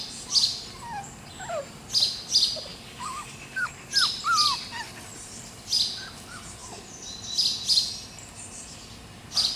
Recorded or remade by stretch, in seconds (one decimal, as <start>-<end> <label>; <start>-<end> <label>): 0.0-2.7 recorded; 2.7-3.7 remade; 3.7-9.6 recorded

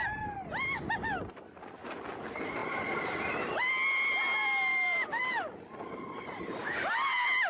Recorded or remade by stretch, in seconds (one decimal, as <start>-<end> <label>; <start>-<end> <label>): 0.0-2.6 recorded; 2.6-3.2 remade; 3.2-4.7 recorded; 4.7-6.0 remade; 6.0-7.5 recorded

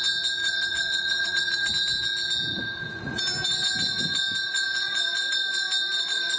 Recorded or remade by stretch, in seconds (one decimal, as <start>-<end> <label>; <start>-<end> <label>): 0.0-0.4 recorded; 0.4-1.7 remade; 1.7-2.5 recorded; 2.5-3.2 remade; 3.2-6.4 recorded

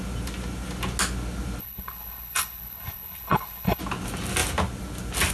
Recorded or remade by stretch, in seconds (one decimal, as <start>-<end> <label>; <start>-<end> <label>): 0.0-1.6 recorded; 1.6-3.8 remade; 3.8-5.3 recorded

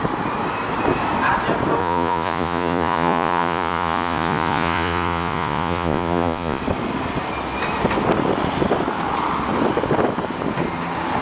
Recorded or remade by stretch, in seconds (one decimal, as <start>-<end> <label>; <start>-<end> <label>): 0.0-1.8 recorded; 1.8-6.6 remade; 6.6-11.2 recorded

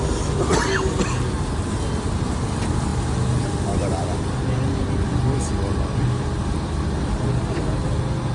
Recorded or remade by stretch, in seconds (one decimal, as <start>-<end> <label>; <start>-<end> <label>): 0.0-8.3 recorded